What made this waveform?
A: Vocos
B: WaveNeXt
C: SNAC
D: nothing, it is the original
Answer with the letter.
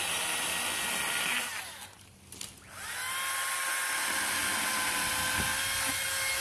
D